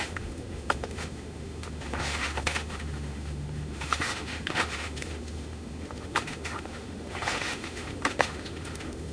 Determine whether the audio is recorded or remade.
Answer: remade